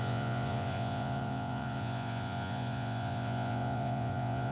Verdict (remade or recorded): remade